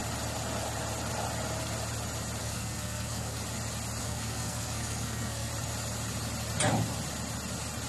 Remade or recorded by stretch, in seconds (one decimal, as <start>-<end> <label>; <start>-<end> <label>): 0.0-2.4 recorded; 2.4-3.4 remade; 3.4-4.0 recorded; 4.0-5.5 remade; 5.5-7.9 recorded